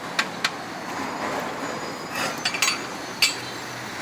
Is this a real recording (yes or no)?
yes